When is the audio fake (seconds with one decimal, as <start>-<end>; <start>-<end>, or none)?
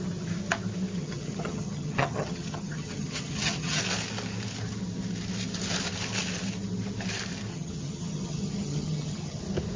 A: 1.0-3.8; 7.5-9.4